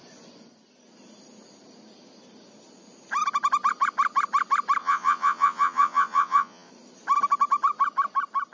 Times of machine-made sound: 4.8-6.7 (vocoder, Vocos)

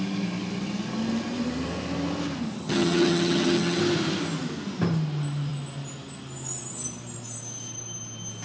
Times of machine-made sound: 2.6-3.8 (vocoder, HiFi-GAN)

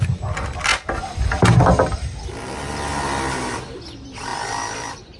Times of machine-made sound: 4.3-5.2 (vocoder, BigVGAN v2)

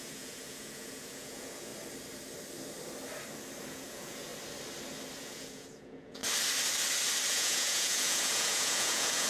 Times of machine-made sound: 0.0-1.7 (vocoder, Vocos); 3.7-4.3; 5.2-6.2; 7.3-9.3

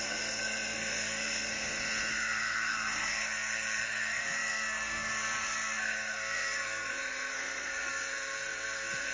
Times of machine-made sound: 0.0-1.5 (codec, SNAC); 2.1-9.1

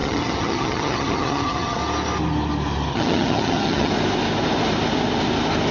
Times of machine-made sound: 0.0-1.8 (vocoder, HiFi-GAN); 2.9-3.9